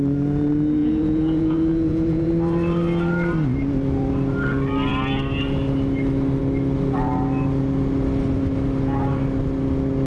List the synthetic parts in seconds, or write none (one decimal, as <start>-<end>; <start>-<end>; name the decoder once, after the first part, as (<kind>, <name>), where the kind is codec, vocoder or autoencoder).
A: 0.8-2.3 (vocoder, Vocos)